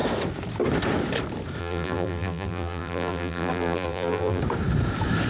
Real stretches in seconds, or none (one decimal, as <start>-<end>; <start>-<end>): 0.0-1.6; 4.4-5.3